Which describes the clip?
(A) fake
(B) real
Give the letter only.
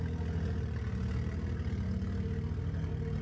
B